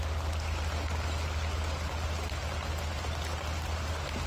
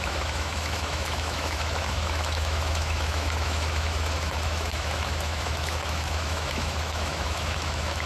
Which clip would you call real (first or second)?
first